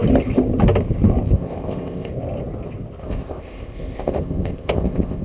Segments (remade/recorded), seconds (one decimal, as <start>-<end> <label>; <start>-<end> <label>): 0.0-1.2 recorded; 1.2-2.1 remade; 2.1-3.0 recorded; 3.0-5.2 remade